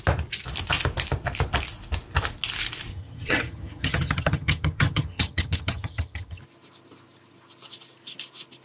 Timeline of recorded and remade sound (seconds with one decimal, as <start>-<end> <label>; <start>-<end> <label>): 0.0-2.9 recorded; 2.9-6.4 remade; 6.4-8.6 recorded